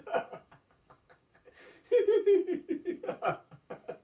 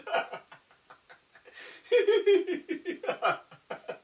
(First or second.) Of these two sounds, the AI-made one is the first